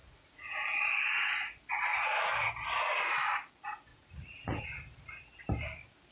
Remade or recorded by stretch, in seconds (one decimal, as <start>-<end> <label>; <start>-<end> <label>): 0.0-0.7 remade; 0.7-3.9 recorded; 3.9-4.6 remade; 4.6-6.1 recorded